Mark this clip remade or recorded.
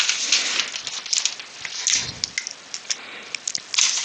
recorded